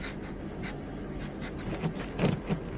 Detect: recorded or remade recorded